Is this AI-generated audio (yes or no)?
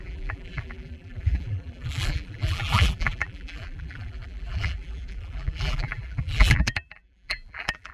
yes